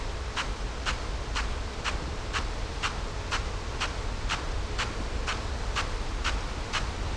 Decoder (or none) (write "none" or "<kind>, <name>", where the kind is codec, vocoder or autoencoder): none